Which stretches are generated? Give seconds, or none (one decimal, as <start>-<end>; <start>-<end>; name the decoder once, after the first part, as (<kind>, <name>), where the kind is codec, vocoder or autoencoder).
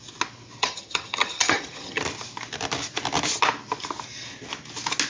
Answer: 0.6-2.0 (vocoder, HiFi-GAN)